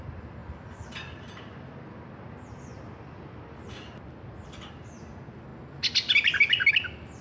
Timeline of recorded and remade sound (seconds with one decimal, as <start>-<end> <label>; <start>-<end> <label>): 0.0-7.2 recorded